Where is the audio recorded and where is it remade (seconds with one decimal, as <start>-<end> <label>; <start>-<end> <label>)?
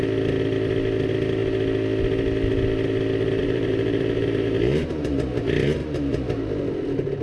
0.0-3.4 recorded; 3.4-5.1 remade; 5.1-5.8 recorded; 5.8-6.4 remade; 6.4-7.2 recorded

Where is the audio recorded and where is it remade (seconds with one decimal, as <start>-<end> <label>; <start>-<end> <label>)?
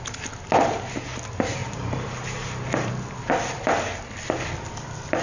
0.0-1.6 recorded; 1.6-2.9 remade; 2.9-5.2 recorded